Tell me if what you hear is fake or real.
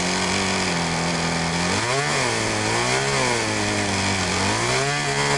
real